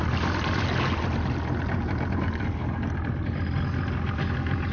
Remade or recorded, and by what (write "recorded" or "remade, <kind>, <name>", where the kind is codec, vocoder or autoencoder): recorded